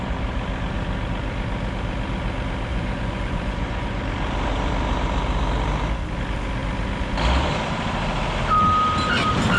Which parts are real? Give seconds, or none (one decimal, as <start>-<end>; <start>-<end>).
0.0-2.7; 4.0-9.6